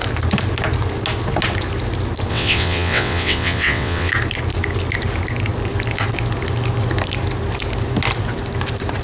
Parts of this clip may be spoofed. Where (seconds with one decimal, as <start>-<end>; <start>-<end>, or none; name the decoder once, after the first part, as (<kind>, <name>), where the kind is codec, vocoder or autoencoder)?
2.3-4.1 (vocoder, WaveNeXt)